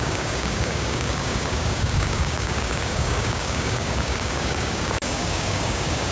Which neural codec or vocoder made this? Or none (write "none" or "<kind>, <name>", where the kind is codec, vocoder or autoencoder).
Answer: codec, DAC